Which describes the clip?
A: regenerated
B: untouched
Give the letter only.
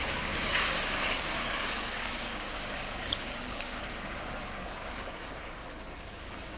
A